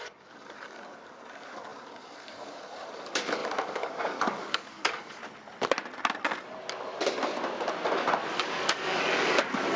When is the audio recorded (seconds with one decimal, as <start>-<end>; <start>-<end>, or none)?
5.2-8.3